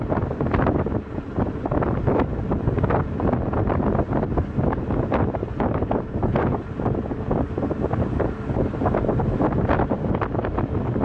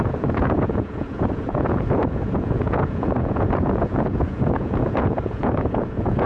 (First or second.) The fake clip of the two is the second